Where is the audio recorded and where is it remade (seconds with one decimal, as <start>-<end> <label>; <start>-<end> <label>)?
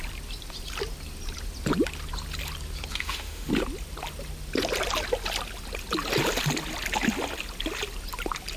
0.0-2.9 recorded; 2.9-3.5 remade; 3.5-8.6 recorded